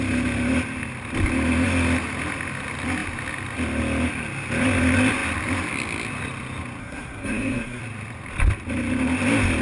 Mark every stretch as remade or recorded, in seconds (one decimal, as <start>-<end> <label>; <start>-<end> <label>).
0.0-6.8 recorded; 6.8-7.8 remade; 7.8-9.6 recorded